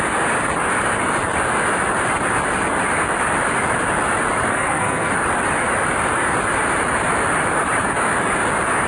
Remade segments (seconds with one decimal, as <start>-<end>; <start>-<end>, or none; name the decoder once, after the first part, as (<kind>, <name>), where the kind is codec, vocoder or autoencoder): 4.5-5.1 (codec, SNAC)